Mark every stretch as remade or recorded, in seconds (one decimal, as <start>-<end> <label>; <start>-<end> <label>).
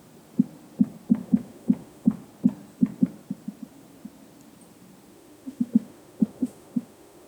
0.0-1.2 recorded; 1.2-2.2 remade; 2.2-5.1 recorded; 5.1-7.3 remade